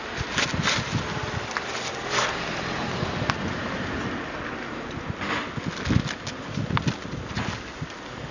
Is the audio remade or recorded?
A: recorded